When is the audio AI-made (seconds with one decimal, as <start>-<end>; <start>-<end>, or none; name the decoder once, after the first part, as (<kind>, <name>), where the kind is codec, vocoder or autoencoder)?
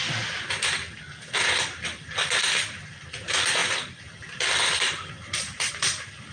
none